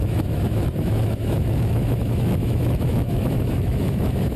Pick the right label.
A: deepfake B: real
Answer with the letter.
A